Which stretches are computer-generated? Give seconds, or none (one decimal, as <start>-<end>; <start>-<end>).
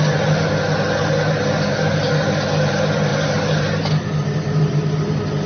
none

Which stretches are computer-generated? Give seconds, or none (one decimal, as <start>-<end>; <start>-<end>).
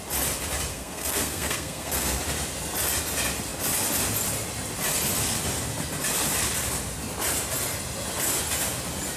0.7-2.2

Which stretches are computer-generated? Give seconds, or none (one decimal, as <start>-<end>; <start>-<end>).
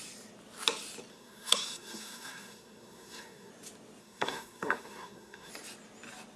1.1-3.5; 4.0-5.5